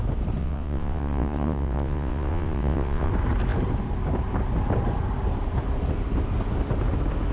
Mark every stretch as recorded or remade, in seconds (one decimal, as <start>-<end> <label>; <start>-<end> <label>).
0.0-0.4 recorded; 0.4-3.1 remade; 3.1-7.3 recorded